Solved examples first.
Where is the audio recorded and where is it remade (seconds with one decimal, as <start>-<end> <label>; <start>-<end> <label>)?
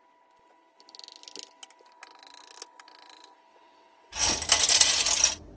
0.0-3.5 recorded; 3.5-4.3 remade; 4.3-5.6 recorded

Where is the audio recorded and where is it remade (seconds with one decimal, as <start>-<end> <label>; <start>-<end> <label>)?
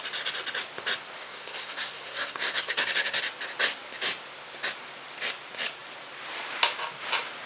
0.0-1.2 recorded; 1.2-3.2 remade; 3.2-7.5 recorded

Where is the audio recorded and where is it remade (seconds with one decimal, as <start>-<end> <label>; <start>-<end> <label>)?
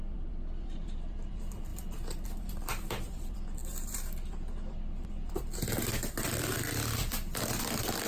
0.0-8.1 remade